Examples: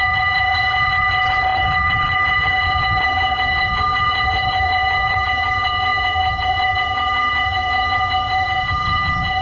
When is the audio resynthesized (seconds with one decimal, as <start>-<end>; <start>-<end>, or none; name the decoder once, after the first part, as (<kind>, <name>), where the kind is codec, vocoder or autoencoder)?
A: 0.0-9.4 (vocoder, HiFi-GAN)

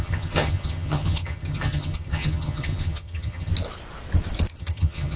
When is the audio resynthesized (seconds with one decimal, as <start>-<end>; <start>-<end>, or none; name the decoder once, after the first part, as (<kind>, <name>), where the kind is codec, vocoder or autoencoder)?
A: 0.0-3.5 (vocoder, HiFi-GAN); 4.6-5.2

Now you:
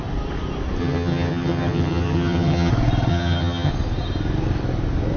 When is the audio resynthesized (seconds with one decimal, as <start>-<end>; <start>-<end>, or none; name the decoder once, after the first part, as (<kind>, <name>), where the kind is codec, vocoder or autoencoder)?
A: 0.8-2.7 (vocoder, HiFi-GAN); 3.1-3.7

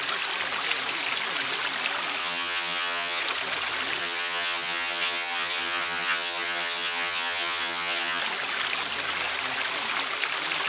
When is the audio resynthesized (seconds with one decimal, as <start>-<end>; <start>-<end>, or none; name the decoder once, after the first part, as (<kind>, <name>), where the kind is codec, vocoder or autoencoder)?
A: 2.2-3.2 (vocoder, HiFi-GAN); 4.0-8.2